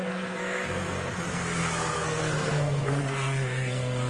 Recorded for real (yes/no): no